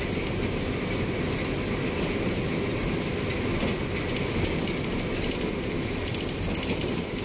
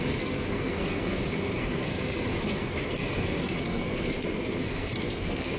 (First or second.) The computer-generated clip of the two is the second